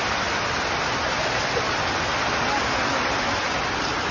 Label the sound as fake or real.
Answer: real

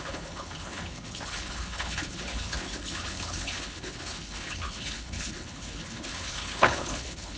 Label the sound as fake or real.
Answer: fake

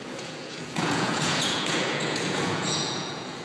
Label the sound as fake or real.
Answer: fake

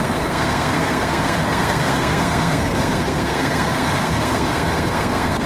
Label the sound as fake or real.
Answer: fake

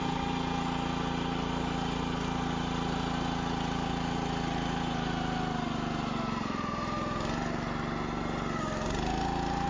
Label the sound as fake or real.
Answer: real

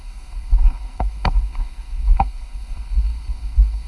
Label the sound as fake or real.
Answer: fake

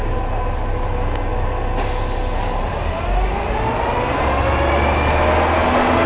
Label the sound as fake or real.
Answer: real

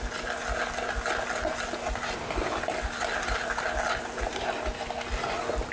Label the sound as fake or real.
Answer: real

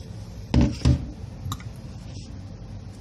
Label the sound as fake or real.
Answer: real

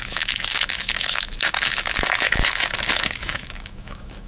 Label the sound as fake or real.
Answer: fake